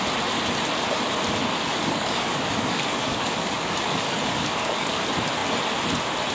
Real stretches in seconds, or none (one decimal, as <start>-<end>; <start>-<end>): 0.0-1.7; 5.0-6.3

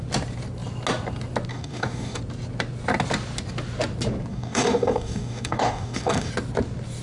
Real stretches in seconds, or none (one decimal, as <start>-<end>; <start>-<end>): 0.0-1.5; 2.2-4.3; 6.3-7.0

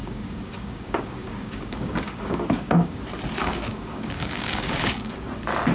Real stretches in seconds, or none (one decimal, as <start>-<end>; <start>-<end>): 3.0-3.4; 5.1-5.7

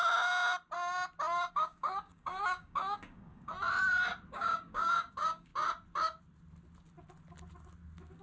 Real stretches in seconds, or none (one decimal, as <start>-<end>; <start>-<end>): 0.0-1.5; 3.5-4.3; 5.5-8.2

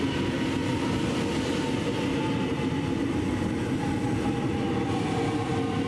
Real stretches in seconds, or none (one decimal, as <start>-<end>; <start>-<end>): 0.0-5.9